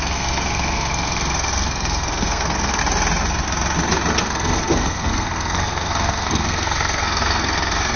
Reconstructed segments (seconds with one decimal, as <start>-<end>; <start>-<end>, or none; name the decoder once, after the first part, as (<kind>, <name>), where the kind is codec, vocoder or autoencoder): 0.0-2.8 (codec, SNAC); 4.2-8.0